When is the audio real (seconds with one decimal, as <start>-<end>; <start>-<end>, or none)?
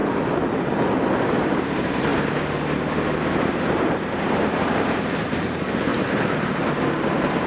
0.0-1.4; 2.1-3.3